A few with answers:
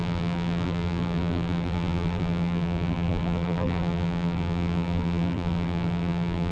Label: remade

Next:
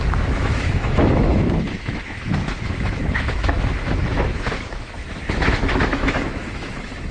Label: remade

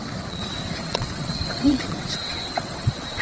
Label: remade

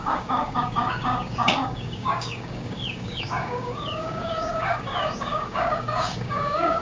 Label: remade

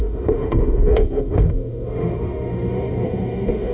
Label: remade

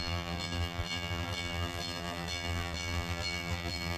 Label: remade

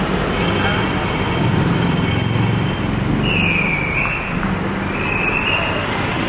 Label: recorded